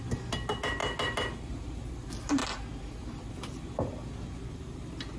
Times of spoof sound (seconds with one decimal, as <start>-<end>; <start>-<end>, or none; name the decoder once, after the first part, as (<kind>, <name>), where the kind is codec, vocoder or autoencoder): none